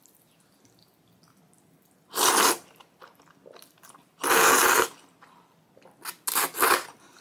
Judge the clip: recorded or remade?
recorded